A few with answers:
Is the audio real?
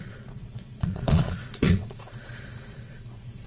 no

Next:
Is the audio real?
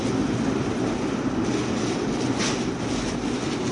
yes